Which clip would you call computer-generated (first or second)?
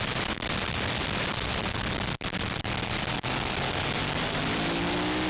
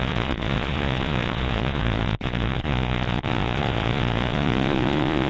second